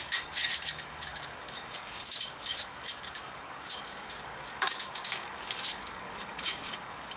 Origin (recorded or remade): remade